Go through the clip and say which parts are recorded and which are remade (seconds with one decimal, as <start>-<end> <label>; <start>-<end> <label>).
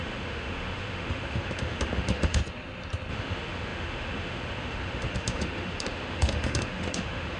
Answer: 0.0-2.4 remade; 2.4-3.1 recorded; 3.1-7.4 remade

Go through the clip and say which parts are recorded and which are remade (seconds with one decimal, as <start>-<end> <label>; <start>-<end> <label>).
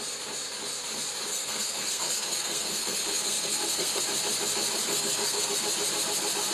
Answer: 0.0-1.3 recorded; 1.3-4.0 remade; 4.0-4.8 recorded; 4.8-5.5 remade; 5.5-6.5 recorded